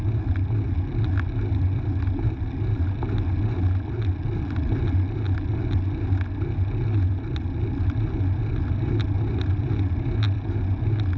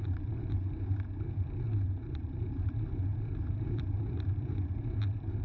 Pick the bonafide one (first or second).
first